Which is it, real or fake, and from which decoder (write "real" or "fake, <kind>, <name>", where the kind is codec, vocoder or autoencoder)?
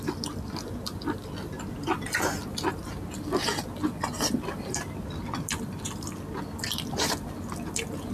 fake, vocoder, BigVGAN v2